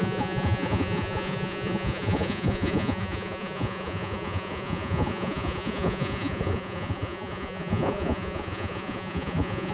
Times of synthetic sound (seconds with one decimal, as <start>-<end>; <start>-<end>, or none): 0.0-9.7